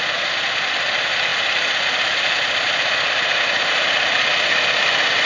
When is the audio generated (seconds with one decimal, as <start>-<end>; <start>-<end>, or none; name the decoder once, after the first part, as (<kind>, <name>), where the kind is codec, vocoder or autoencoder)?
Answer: none